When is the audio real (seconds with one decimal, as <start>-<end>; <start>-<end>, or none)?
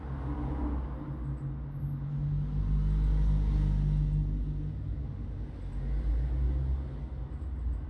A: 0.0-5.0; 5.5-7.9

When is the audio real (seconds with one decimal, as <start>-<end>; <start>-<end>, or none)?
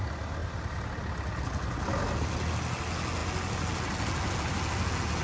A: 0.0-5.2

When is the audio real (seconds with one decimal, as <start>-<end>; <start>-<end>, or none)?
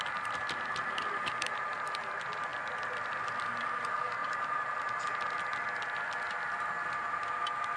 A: 0.0-7.8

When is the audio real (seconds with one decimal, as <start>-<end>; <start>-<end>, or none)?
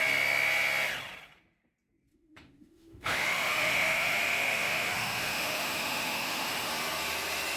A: 0.0-2.1; 6.7-7.6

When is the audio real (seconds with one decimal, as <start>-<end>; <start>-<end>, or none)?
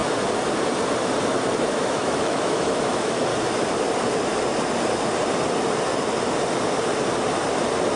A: 0.0-1.6; 3.3-8.0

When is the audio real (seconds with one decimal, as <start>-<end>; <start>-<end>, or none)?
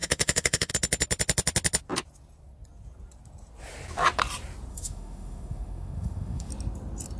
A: 0.7-4.7; 6.5-7.2